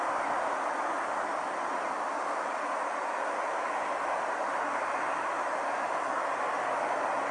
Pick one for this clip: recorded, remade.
recorded